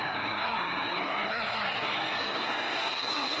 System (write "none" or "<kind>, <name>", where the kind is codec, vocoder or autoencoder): codec, SNAC